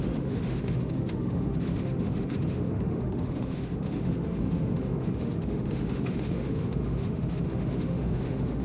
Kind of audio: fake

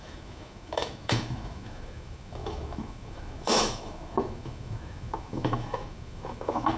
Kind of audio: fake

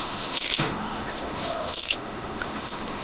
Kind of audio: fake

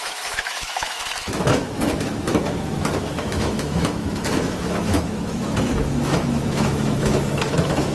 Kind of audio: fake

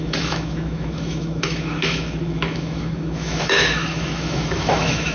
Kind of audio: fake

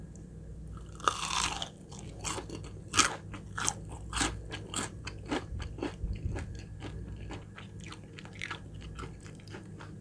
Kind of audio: real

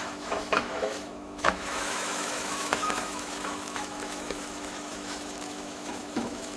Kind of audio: fake